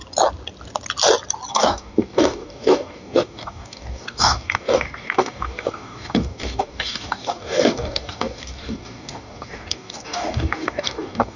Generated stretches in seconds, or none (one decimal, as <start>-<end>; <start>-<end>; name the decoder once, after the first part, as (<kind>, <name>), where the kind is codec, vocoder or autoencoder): 1.5-11.4 (codec, DAC)